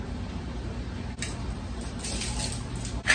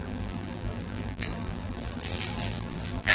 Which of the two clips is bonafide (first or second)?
first